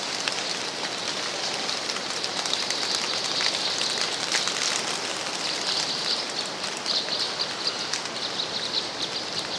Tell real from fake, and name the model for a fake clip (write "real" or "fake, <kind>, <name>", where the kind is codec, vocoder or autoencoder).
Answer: real